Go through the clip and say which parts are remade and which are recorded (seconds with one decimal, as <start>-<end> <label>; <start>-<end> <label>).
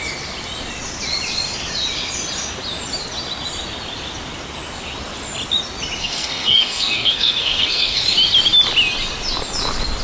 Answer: 0.0-6.0 recorded; 6.0-8.0 remade; 8.0-10.0 recorded